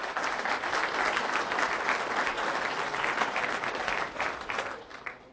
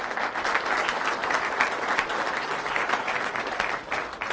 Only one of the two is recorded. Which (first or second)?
second